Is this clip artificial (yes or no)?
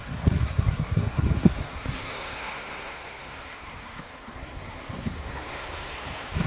yes